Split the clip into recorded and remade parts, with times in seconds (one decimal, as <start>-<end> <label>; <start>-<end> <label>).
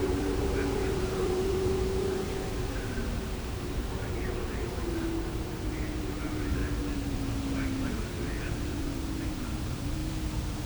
0.0-6.6 remade; 6.6-8.5 recorded; 8.5-10.0 remade; 10.0-10.7 recorded